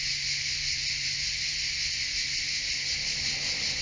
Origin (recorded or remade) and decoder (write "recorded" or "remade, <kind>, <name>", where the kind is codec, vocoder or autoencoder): recorded